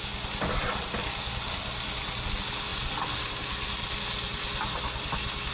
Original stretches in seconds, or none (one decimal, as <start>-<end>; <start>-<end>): 0.0-5.5